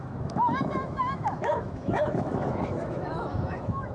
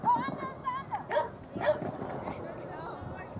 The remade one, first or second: first